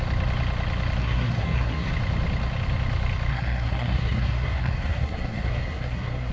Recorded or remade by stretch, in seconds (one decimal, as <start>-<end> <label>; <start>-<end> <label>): 0.0-1.0 recorded; 1.0-1.9 remade; 1.9-3.3 recorded; 3.3-6.3 remade